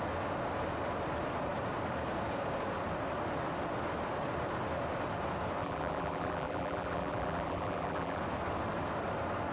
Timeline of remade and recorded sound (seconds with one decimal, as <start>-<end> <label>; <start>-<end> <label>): 0.0-5.6 recorded; 5.6-8.2 remade; 8.2-9.5 recorded